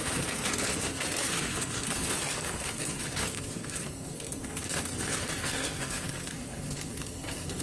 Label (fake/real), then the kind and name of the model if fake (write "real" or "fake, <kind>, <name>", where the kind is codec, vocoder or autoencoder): fake, codec, SNAC